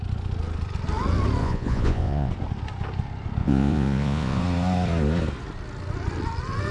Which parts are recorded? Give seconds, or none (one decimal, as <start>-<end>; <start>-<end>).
0.0-1.4; 2.3-3.4; 4.4-6.7